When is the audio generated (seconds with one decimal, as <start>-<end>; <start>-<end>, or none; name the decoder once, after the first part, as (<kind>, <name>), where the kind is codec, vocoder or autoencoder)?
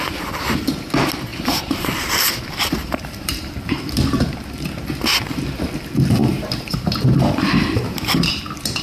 1.3-3.7 (vocoder, BigVGAN v2); 6.2-8.4